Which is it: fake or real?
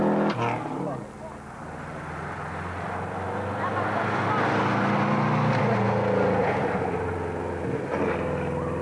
real